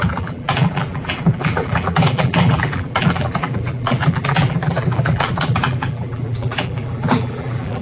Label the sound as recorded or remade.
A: remade